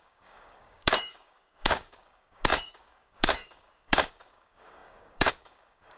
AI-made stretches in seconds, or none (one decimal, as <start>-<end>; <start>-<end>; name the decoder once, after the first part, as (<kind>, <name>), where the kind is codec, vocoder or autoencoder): 0.0-6.0 (codec, DAC)